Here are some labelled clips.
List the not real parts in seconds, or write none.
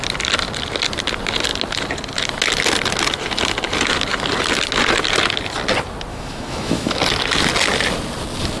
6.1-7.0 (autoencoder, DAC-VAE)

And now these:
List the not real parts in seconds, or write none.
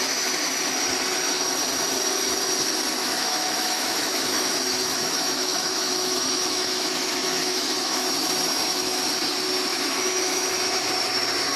3.0-8.1 (autoencoder, DAC-VAE); 9.7-10.9